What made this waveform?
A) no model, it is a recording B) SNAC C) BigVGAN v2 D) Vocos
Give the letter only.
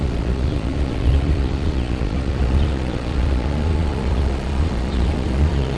D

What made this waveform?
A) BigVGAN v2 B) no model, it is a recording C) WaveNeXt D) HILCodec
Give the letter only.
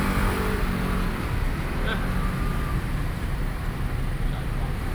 A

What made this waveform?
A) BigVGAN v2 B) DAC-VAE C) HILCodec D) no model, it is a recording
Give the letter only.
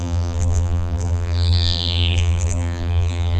A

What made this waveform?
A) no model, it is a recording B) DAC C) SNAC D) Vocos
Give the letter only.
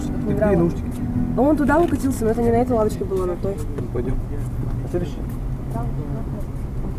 A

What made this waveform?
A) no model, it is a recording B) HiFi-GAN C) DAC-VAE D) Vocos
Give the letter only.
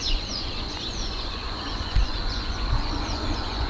D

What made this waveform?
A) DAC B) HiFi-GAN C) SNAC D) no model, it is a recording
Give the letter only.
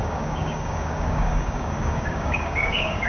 A